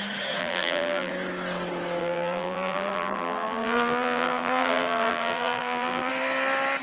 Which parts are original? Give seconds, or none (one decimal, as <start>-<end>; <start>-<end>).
0.0-0.4; 1.1-2.0; 6.1-6.8